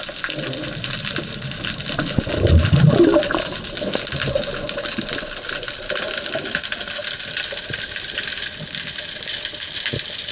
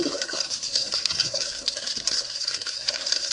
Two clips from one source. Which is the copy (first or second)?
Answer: second